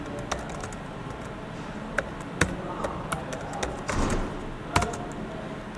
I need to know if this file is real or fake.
real